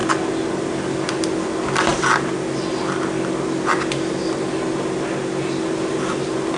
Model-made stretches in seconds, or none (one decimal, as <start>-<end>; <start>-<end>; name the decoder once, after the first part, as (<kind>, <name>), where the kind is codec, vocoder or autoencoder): none